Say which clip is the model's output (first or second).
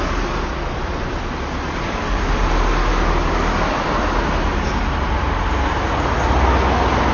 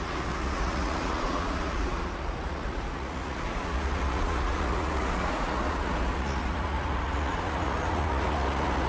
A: second